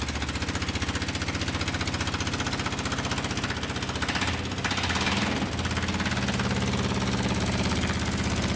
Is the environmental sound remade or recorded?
recorded